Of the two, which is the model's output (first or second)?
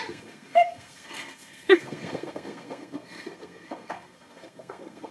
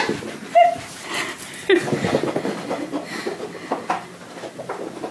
first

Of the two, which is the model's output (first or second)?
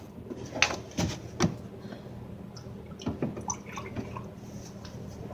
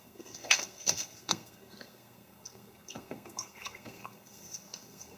second